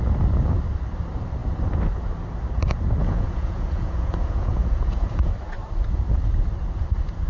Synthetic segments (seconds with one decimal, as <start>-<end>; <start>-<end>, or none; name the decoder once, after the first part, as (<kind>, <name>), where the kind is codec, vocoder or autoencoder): 3.0-5.3 (vocoder, Vocos)